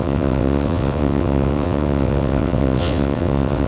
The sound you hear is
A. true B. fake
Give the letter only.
B